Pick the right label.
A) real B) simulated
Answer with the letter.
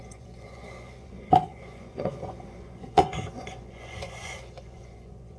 B